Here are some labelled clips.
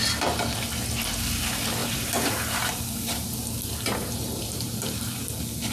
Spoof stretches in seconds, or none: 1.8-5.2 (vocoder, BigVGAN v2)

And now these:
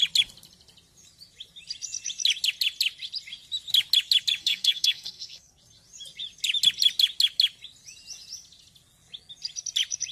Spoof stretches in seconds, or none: 4.4-5.5 (codec, SNAC)

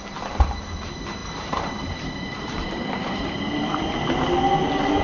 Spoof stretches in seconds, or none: 1.2-4.0 (vocoder, BigVGAN v2)

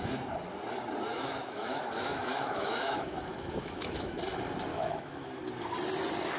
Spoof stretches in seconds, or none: 1.1-4.2 (autoencoder, DAC-VAE); 4.7-5.4

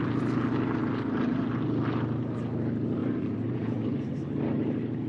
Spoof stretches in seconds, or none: 3.0-4.1 (vocoder, Vocos)

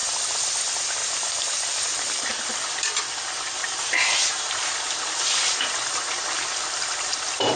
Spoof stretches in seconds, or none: 1.0-2.3 (vocoder, BigVGAN v2); 3.6-6.4